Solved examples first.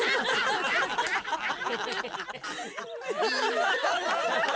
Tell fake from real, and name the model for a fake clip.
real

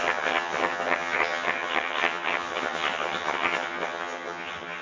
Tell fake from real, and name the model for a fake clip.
fake, vocoder, HiFi-GAN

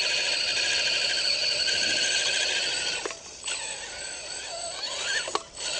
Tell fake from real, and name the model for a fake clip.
real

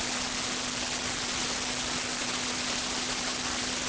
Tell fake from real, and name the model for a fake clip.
real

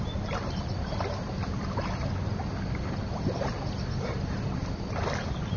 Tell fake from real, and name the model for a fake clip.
real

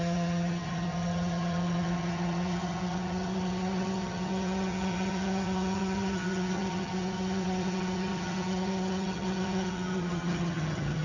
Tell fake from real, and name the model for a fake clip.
fake, vocoder, HiFi-GAN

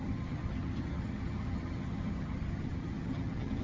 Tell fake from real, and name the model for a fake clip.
fake, vocoder, HiFi-GAN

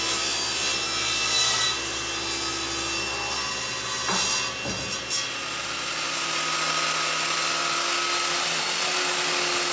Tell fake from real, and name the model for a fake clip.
real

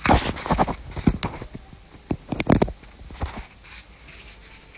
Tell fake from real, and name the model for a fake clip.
real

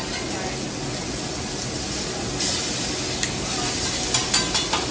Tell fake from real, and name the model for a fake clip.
real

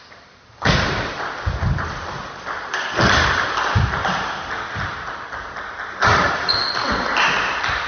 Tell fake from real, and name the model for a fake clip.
real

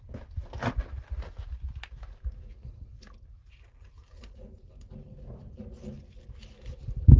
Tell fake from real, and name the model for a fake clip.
real